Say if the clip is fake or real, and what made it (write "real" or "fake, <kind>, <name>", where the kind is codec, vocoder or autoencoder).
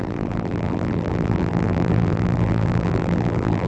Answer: fake, vocoder, BigVGAN v2